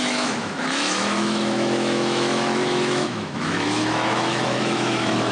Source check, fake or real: fake